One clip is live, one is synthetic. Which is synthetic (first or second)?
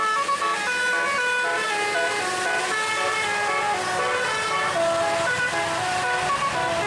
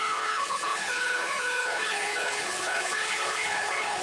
second